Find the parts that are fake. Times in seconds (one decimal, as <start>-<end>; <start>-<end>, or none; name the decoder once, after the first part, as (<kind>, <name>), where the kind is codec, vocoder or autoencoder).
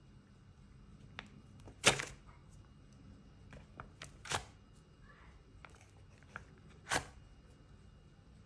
none